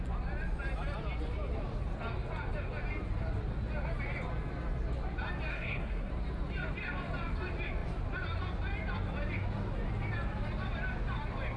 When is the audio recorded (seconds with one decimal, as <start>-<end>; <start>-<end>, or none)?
0.0-5.5; 6.1-11.6